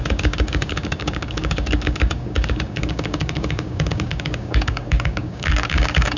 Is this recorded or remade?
remade